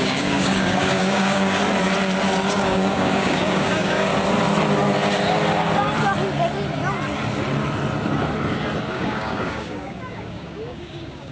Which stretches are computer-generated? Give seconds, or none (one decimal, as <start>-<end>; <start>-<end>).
0.0-1.6; 2.5-4.1; 8.9-11.3